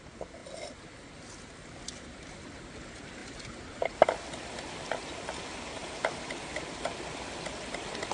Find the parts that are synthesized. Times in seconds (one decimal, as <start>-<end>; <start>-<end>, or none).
3.2-3.8; 5.8-6.5